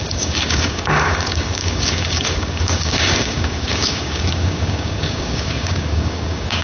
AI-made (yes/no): yes